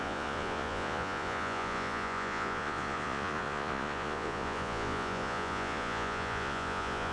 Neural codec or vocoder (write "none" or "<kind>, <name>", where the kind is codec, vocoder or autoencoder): vocoder, Vocos